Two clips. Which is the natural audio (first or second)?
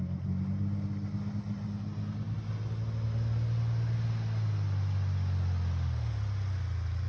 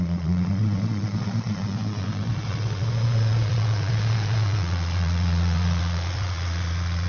first